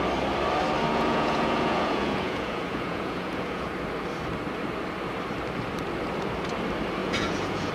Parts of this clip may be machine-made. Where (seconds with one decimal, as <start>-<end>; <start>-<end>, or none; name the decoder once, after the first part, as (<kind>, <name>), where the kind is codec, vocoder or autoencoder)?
0.9-3.7 (vocoder, Vocos); 7.0-7.7